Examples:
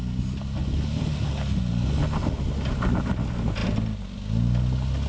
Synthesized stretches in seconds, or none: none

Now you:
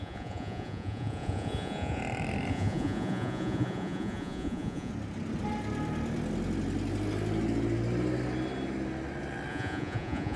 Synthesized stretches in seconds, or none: 0.0-2.0 (vocoder, Vocos); 2.5-4.9; 9.5-10.4

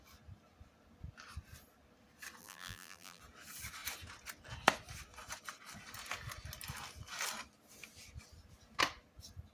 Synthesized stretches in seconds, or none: 2.4-3.2 (vocoder, BigVGAN v2)